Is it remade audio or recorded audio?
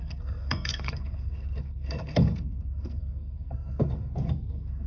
remade